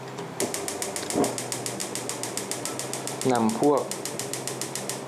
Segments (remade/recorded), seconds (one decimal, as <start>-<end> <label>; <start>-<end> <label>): 0.0-5.1 recorded